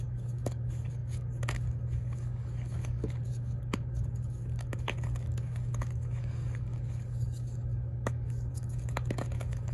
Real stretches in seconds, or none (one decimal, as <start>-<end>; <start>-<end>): none